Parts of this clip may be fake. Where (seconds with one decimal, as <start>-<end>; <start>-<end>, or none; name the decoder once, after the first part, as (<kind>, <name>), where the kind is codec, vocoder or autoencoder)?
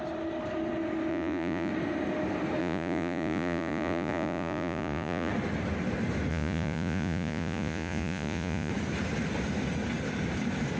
1.1-1.7 (vocoder, Vocos); 2.6-5.3; 6.3-8.7